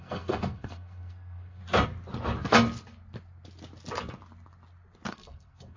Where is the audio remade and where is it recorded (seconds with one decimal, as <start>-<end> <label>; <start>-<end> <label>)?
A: 0.0-1.6 remade; 1.6-5.1 recorded; 5.1-5.8 remade